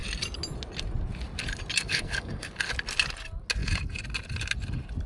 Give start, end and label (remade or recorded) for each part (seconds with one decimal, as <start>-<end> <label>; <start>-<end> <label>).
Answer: 0.0-1.8 recorded; 1.8-2.5 remade; 2.5-5.1 recorded